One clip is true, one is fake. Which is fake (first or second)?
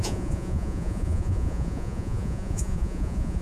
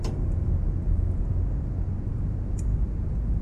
first